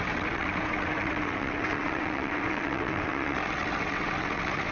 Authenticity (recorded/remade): remade